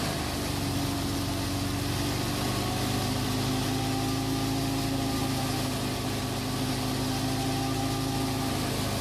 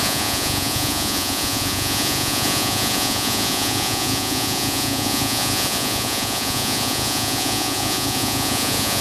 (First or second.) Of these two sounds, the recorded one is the first